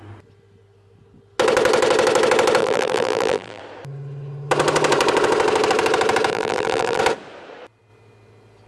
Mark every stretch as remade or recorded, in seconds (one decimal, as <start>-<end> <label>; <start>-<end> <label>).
0.0-2.6 recorded; 2.6-3.6 remade; 3.6-6.3 recorded; 6.3-7.0 remade; 7.0-8.7 recorded